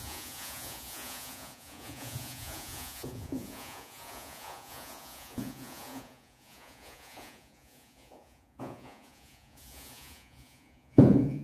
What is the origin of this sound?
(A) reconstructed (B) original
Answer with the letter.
A